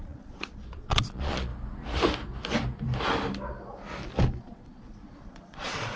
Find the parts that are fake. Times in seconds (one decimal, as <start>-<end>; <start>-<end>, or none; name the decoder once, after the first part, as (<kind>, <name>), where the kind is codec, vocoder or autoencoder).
0.0-1.5 (vocoder, Vocos); 4.4-6.0